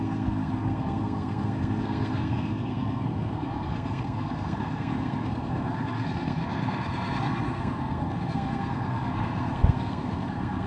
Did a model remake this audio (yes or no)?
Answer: yes